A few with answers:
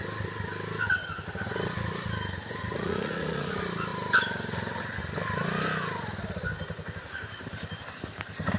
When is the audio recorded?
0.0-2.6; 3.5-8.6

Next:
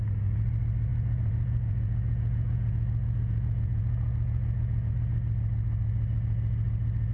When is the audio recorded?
0.0-0.9; 4.9-7.1